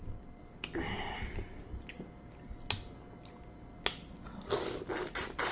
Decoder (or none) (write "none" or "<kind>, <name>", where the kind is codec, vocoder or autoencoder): none